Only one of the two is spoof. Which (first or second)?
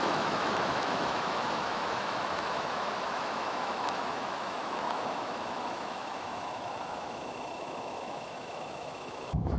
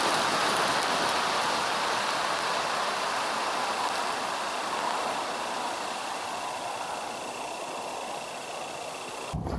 first